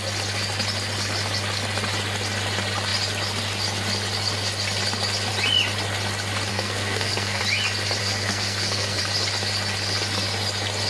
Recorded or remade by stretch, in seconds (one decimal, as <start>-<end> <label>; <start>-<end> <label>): 0.0-6.5 recorded; 6.5-7.4 remade; 7.4-8.0 recorded; 8.0-9.0 remade; 9.0-10.9 recorded